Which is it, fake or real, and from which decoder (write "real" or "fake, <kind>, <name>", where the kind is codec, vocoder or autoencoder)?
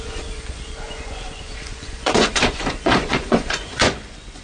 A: fake, vocoder, Vocos